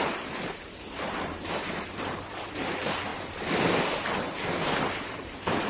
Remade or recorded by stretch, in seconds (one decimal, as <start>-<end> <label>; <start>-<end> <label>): 0.0-3.1 remade; 3.1-5.1 recorded; 5.1-5.7 remade